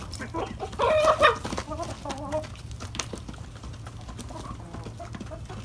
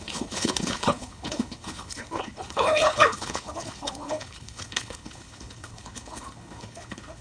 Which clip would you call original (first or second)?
first